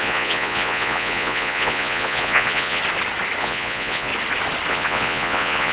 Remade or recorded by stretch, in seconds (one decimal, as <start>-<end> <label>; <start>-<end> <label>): 0.0-2.8 remade; 2.8-3.4 recorded; 3.4-4.1 remade; 4.1-4.7 recorded; 4.7-5.7 remade